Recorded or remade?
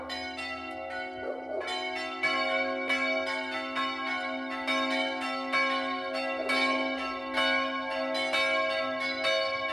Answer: recorded